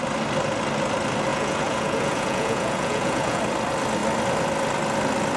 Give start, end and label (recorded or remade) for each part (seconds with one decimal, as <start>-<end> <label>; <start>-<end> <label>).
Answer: 0.0-1.3 recorded; 1.3-3.4 remade; 3.4-5.4 recorded